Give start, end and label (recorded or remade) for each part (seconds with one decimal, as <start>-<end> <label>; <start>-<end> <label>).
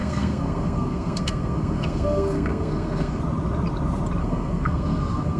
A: 0.0-3.2 remade; 3.2-4.2 recorded; 4.2-5.4 remade